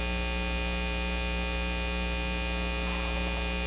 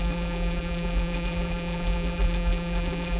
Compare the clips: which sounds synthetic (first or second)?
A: second